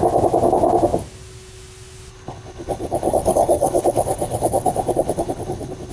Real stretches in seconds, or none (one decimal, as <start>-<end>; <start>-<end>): 0.0-2.1